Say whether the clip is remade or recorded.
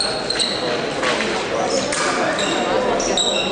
recorded